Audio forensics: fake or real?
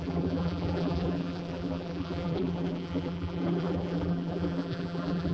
fake